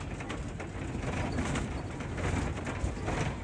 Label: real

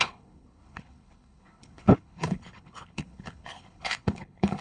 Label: fake